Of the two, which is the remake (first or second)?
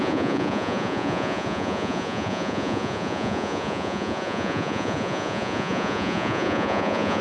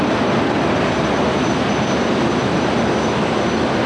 first